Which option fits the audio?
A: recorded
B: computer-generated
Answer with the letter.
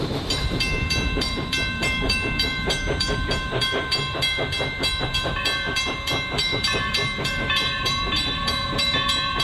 B